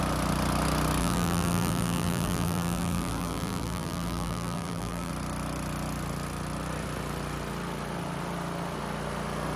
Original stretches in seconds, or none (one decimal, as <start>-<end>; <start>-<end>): 0.0-1.0; 5.1-9.6